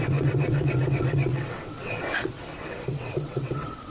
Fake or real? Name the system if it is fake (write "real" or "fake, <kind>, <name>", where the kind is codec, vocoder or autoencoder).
fake, vocoder, WaveNeXt